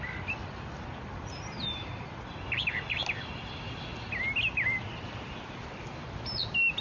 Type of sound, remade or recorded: recorded